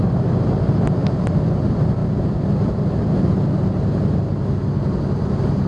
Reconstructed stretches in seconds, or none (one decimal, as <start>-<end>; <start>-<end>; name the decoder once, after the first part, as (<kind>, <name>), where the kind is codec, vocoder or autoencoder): none